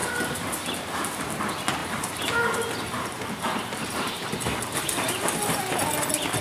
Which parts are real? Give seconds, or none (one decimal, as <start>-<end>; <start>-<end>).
1.4-1.8; 5.6-6.4